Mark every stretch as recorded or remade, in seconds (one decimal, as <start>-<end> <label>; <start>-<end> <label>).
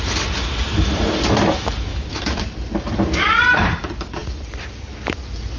0.0-1.9 recorded; 1.9-2.4 remade; 2.4-5.6 recorded